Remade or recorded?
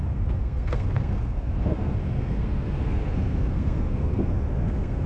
remade